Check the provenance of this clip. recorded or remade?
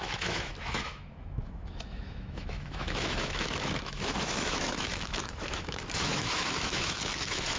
remade